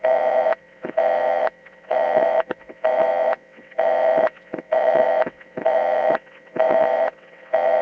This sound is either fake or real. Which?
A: fake